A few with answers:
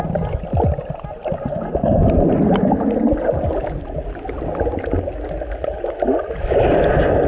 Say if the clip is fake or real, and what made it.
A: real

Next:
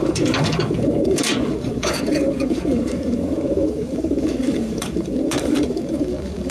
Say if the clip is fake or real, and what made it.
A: fake, codec, DAC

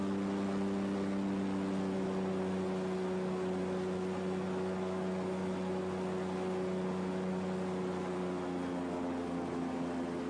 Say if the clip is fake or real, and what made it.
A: real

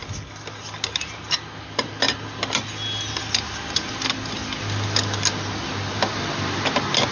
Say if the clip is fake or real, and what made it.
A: real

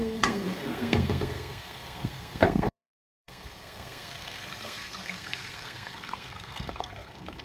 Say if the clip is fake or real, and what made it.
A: fake, codec, SNAC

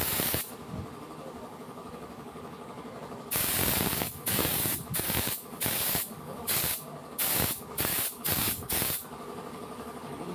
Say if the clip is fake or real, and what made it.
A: fake, codec, DAC